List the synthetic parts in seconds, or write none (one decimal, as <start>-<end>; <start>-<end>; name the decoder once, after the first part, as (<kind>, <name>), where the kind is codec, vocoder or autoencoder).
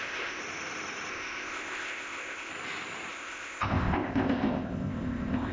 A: 0.0-0.4 (codec, ZipCodec); 1.1-2.5; 3.1-5.5